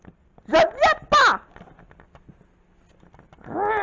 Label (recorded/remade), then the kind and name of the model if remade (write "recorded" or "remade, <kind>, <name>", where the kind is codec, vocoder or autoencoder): recorded